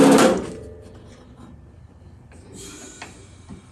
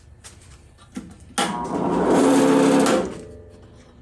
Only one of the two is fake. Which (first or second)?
first